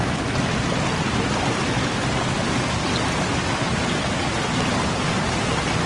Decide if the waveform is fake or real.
real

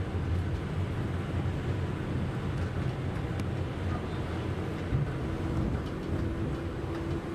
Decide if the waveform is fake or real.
real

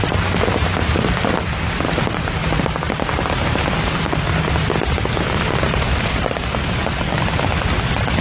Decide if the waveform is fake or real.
real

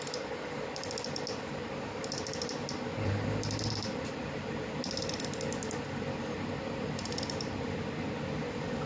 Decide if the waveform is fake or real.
real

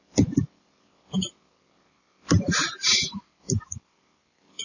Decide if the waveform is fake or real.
real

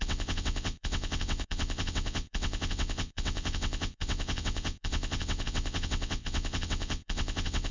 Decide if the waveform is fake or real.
fake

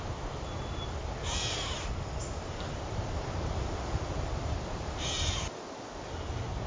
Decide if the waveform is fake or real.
real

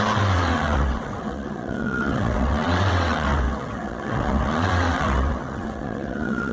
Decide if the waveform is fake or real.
fake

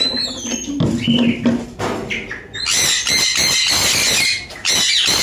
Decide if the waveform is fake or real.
real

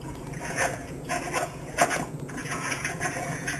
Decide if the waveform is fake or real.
fake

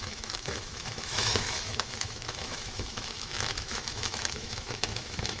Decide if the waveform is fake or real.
fake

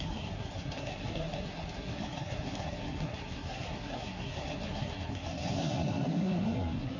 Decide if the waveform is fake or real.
fake